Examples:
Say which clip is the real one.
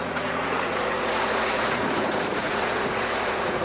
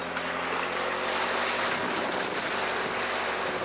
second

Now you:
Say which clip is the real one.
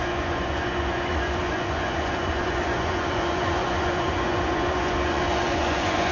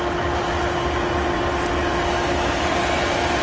second